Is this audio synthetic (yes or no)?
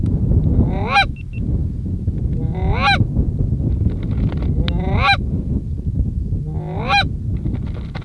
no